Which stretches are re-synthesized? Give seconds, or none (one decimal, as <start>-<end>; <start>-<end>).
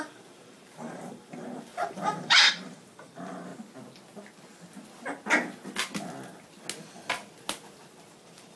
0.0-3.5; 8.1-8.6